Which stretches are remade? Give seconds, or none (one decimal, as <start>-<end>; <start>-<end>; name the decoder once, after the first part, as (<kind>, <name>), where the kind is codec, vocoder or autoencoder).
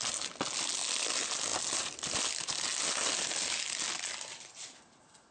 none